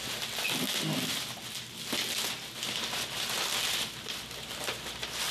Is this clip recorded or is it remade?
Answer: recorded